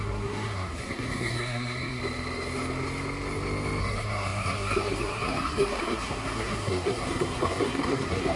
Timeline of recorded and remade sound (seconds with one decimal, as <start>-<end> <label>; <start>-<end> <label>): 0.0-2.0 remade; 2.0-3.8 recorded; 3.8-8.4 remade